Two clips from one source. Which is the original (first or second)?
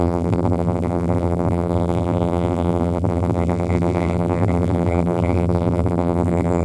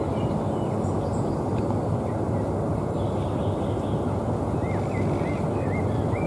second